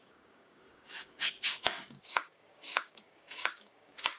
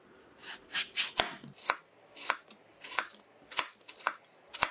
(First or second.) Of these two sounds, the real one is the second